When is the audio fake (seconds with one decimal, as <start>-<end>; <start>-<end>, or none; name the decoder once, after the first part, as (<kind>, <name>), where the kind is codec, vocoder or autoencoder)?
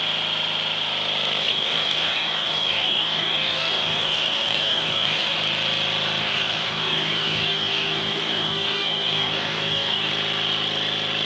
1.4-5.4 (codec, DAC); 6.2-10.1